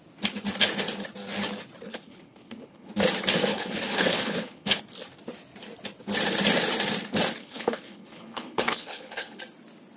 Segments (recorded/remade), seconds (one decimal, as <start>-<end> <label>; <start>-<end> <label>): 0.0-1.8 recorded; 1.8-2.9 remade; 2.9-3.5 recorded; 3.5-4.8 remade; 4.8-7.4 recorded; 7.4-9.4 remade; 9.4-10.0 recorded